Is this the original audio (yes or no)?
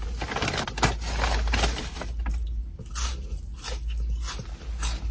yes